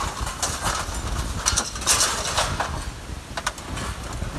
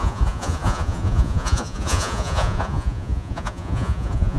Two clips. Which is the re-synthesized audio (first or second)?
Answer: second